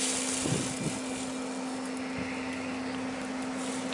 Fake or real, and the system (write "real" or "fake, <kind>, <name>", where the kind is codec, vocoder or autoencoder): real